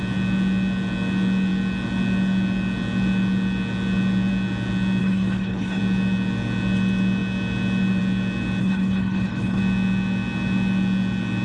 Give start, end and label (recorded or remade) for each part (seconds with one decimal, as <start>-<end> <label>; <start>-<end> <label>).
0.0-5.0 recorded; 5.0-5.8 remade; 5.8-8.6 recorded; 8.6-9.6 remade; 9.6-11.4 recorded

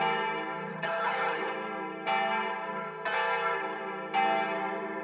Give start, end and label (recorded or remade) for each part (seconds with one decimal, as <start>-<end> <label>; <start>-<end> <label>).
0.0-0.7 recorded; 0.7-1.5 remade; 1.5-5.0 recorded